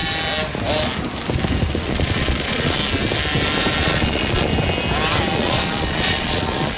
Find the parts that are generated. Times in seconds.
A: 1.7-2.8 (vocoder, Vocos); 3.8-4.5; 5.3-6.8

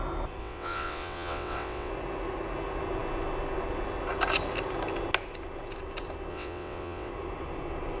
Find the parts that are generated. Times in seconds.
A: 0.4-1.9 (vocoder, WaveNeXt); 6.3-7.1

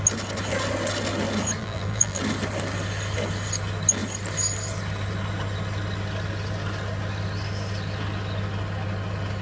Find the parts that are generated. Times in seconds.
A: 1.6-2.2 (vocoder, BigVGAN v2)

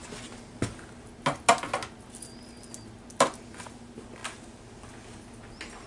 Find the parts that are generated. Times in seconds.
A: none

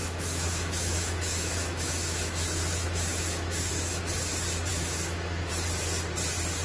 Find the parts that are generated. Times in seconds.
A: 0.0-4.0 (autoencoder, DAC-VAE); 4.7-5.5

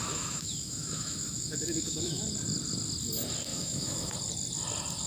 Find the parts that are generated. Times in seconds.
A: 0.0-2.2 (autoencoder, DAC-VAE); 3.5-4.1

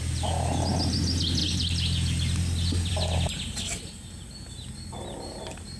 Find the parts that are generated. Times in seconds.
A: none

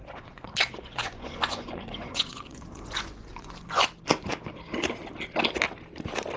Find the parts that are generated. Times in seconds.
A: 0.0-3.8 (vocoder, Vocos)